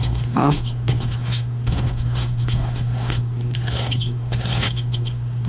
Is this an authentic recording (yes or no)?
no